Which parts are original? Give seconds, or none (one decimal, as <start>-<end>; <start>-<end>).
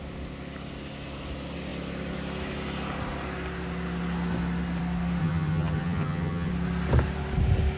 0.0-5.2; 6.5-7.8